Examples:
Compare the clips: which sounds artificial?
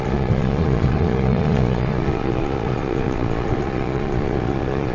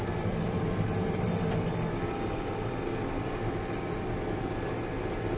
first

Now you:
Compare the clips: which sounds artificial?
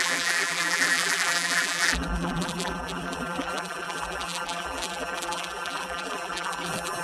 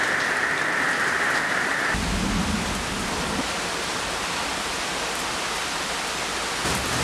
first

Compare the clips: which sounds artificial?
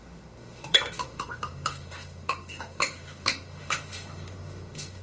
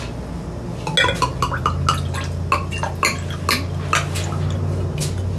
first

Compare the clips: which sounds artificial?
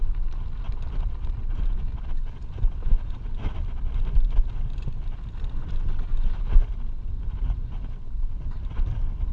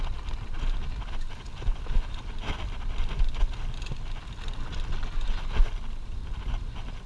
first